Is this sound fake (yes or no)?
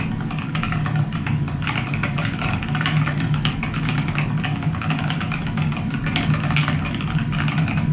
yes